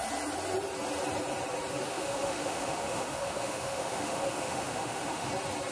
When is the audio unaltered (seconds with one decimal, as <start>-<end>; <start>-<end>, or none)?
0.0-1.9; 5.3-5.7